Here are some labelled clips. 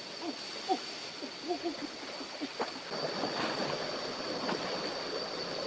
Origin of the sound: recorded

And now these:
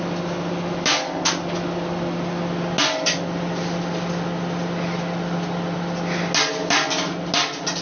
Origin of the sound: recorded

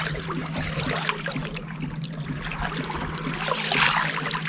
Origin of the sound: recorded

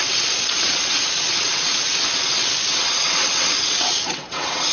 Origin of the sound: remade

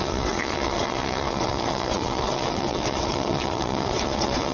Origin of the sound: remade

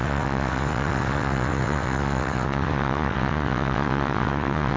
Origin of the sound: remade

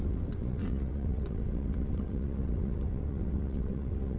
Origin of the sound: remade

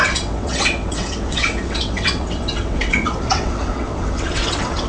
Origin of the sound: remade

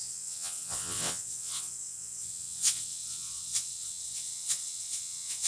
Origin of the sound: remade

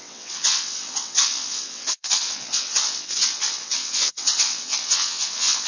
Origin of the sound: remade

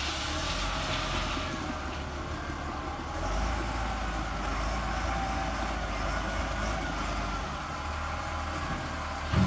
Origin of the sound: recorded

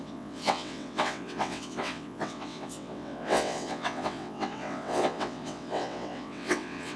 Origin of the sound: remade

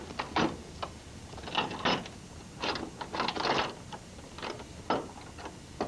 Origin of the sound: recorded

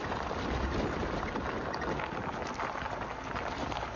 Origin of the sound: recorded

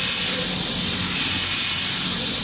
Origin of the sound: recorded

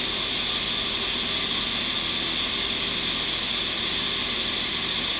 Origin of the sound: recorded